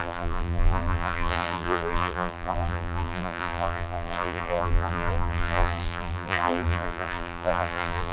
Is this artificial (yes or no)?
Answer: yes